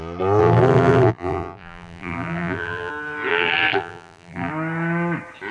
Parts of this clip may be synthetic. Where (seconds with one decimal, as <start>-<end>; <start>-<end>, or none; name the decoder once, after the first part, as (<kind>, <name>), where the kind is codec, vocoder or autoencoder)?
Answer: 0.4-2.9 (vocoder, BigVGAN v2); 3.3-4.5